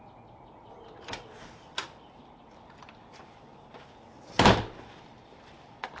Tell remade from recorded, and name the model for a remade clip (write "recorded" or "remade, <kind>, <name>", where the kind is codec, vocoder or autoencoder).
recorded